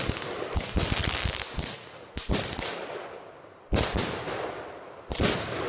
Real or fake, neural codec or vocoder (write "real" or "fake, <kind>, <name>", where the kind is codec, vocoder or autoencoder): real